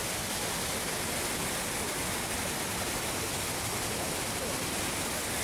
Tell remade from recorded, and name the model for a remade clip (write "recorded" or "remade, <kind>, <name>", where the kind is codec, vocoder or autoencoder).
recorded